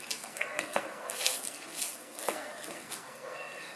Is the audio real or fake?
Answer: fake